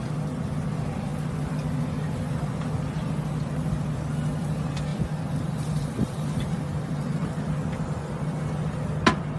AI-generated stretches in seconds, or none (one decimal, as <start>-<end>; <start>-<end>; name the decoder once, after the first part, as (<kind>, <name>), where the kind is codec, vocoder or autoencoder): 4.9-7.4 (vocoder, BigVGAN v2)